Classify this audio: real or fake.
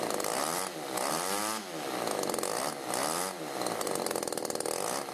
real